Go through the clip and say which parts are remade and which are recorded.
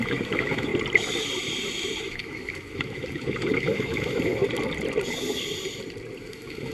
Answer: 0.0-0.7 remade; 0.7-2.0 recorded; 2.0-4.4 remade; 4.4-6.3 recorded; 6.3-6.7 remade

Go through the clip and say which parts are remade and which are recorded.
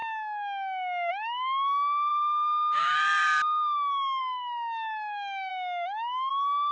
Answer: 0.0-1.1 recorded; 1.1-5.5 remade; 5.5-6.3 recorded; 6.3-6.7 remade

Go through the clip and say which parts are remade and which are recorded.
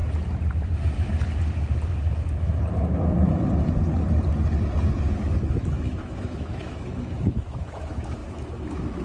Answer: 0.0-5.1 recorded; 5.1-9.0 remade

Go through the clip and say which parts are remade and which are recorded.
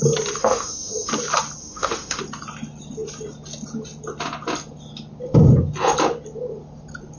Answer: 0.0-0.4 recorded; 0.4-1.1 remade; 1.1-1.6 recorded; 1.6-2.2 remade; 2.2-7.2 recorded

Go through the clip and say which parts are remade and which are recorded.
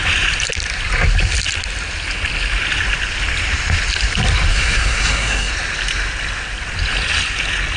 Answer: 0.0-4.5 recorded; 4.5-5.5 remade; 5.5-7.8 recorded